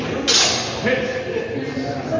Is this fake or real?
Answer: real